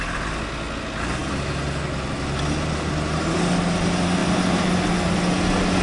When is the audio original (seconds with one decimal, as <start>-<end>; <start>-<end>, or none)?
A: 0.0-4.2; 4.7-5.8